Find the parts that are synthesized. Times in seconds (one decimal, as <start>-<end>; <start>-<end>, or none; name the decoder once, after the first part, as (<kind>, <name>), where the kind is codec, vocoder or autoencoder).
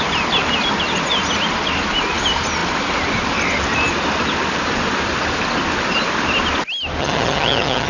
7.0-7.9 (vocoder, HiFi-GAN)